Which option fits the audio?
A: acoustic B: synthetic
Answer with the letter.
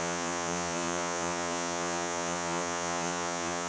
B